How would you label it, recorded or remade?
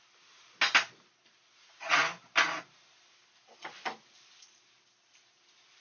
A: recorded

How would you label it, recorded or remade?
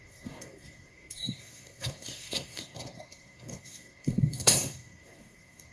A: remade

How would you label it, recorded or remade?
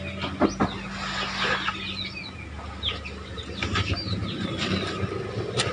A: recorded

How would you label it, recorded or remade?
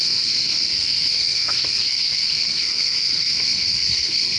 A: remade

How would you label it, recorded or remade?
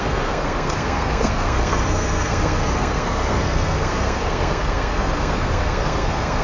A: remade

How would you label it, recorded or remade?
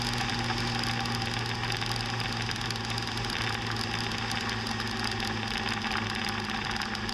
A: recorded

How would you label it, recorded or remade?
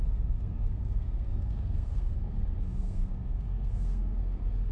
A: remade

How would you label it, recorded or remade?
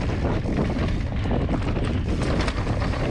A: recorded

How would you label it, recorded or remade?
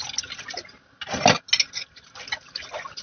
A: recorded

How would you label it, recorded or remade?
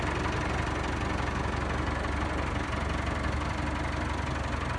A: recorded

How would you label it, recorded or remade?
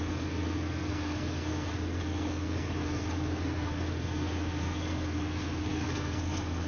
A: remade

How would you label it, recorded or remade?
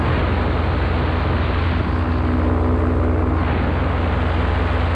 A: recorded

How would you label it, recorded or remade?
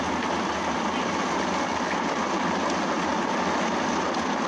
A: recorded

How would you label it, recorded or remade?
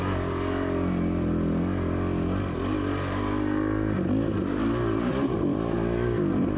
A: recorded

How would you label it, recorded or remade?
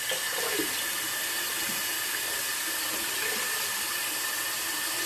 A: recorded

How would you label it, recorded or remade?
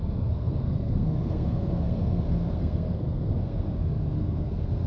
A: remade